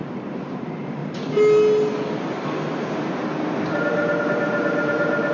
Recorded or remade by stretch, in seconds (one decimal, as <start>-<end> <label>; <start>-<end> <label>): 0.0-1.0 remade; 1.0-4.2 recorded; 4.2-5.3 remade